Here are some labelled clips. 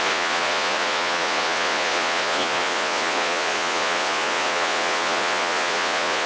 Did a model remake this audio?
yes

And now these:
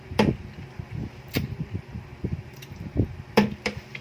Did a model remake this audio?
yes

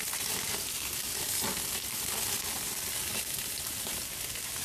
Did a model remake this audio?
no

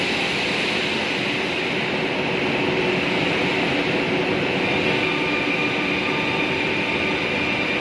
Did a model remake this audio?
no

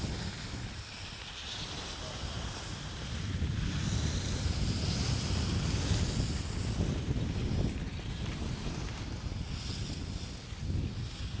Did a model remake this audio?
no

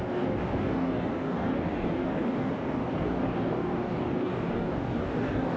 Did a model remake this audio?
yes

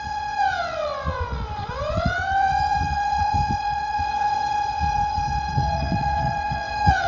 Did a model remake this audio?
yes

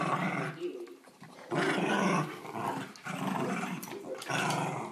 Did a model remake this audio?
no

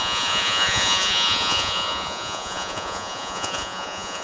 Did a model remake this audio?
yes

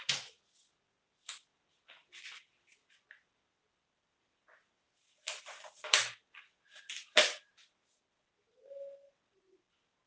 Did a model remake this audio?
no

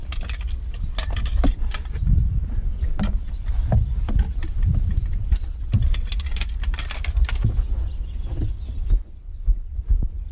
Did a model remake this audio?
no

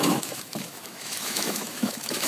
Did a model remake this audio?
yes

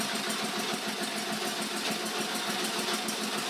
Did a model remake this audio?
no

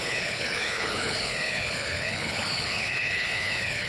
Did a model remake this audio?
yes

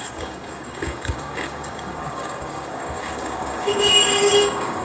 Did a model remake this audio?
yes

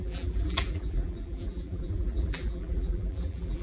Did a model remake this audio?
yes